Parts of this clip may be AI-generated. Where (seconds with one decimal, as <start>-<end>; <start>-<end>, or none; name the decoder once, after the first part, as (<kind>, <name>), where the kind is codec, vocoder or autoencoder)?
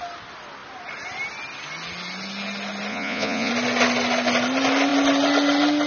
2.9-3.5 (vocoder, Vocos)